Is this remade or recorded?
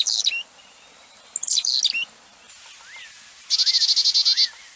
recorded